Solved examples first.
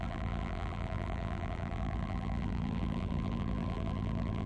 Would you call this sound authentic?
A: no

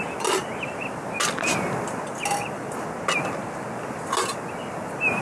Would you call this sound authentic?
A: yes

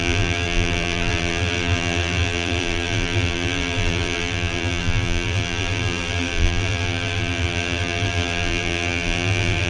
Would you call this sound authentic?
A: no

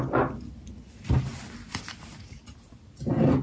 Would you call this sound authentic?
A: yes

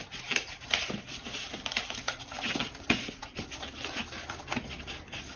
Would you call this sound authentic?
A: no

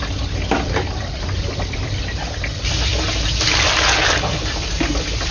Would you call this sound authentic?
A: yes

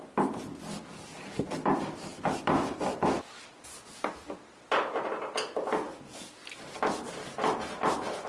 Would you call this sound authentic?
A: yes